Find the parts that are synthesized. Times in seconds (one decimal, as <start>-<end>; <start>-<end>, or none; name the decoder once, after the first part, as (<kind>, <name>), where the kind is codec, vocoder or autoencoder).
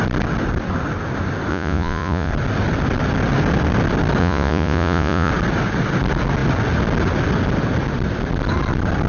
1.5-2.3 (vocoder, Vocos); 4.2-5.3